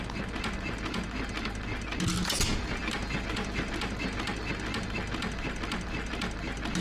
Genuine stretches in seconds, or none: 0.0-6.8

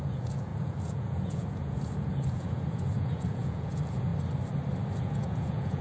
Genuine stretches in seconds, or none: 4.1-4.9

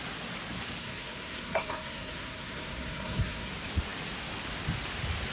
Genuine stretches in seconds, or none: 0.0-0.8; 3.5-5.3

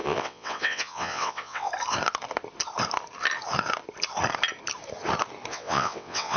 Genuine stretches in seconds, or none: 1.7-5.5

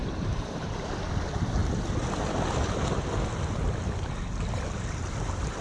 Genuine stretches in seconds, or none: 1.0-5.6

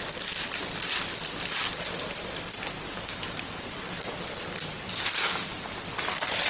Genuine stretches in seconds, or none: 0.0-6.5